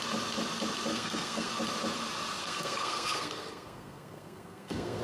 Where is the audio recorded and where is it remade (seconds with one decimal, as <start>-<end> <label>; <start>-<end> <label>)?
0.0-0.9 recorded; 0.9-1.5 remade; 1.5-2.4 recorded; 2.4-5.0 remade

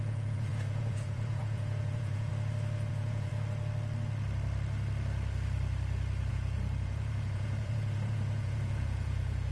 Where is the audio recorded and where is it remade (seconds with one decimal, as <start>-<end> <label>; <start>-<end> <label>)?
0.0-2.3 remade; 2.3-2.9 recorded; 2.9-3.3 remade; 3.3-6.3 recorded; 6.3-9.5 remade

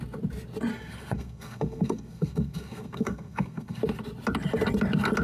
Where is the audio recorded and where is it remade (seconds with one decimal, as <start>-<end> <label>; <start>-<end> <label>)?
0.0-0.7 recorded; 0.7-3.8 remade; 3.8-5.2 recorded